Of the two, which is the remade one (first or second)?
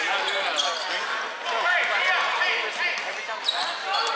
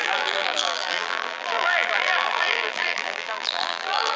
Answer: second